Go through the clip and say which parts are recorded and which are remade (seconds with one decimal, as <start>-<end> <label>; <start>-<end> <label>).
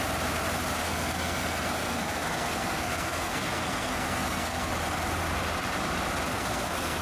0.0-0.8 recorded; 0.8-4.7 remade; 4.7-6.3 recorded; 6.3-7.0 remade